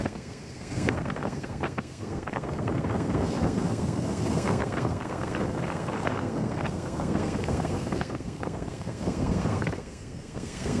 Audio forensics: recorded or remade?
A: remade